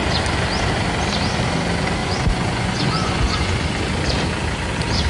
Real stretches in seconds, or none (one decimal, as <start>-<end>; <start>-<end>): 0.0-2.0; 3.6-5.1

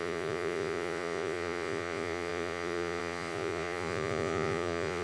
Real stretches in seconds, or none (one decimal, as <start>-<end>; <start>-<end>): none

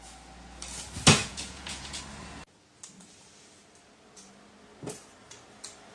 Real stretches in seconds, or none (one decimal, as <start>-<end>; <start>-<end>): 0.0-1.2; 2.0-5.9